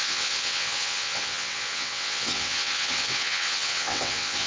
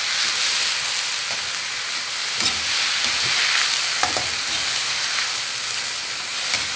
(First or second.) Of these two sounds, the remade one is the first